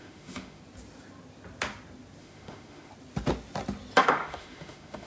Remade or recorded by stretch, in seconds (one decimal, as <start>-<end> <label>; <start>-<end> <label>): 0.0-0.6 remade; 0.6-2.2 recorded; 2.2-2.9 remade; 2.9-4.0 recorded; 4.0-5.1 remade